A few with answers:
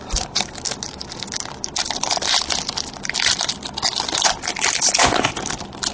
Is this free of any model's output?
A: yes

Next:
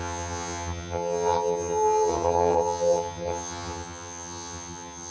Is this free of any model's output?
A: no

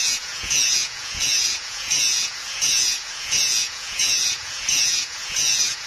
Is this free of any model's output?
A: no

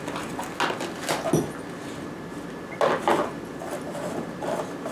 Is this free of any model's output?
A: yes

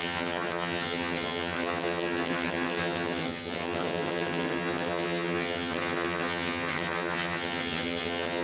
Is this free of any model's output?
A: no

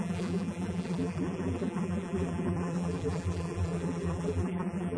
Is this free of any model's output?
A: no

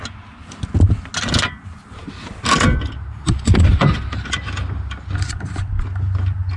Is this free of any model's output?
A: yes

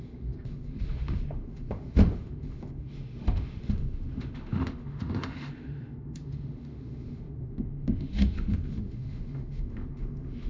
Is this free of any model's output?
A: no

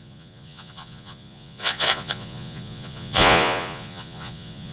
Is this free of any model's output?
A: no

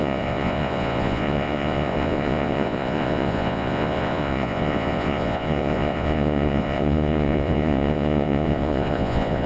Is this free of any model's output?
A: no